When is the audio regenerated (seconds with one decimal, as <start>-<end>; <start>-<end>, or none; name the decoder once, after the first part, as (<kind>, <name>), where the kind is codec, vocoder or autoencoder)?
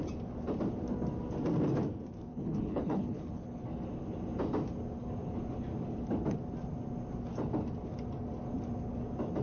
2.3-3.6 (codec, HILCodec)